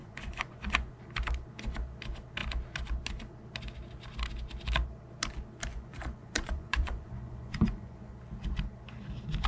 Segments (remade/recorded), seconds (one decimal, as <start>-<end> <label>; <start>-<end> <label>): 0.0-0.9 remade; 0.9-5.7 recorded; 5.7-8.1 remade; 8.1-9.5 recorded

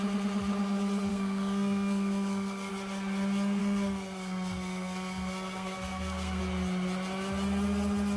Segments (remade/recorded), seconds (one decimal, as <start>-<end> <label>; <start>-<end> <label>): 0.0-1.1 recorded; 1.1-2.7 remade; 2.7-3.6 recorded; 3.6-6.4 remade; 6.4-8.2 recorded

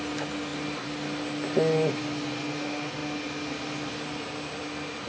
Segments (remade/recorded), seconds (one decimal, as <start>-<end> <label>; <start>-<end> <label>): 0.0-5.1 recorded